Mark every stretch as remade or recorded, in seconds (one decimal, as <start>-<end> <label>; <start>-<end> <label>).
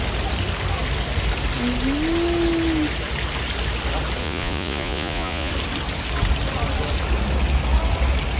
0.0-4.2 recorded; 4.2-5.5 remade; 5.5-8.4 recorded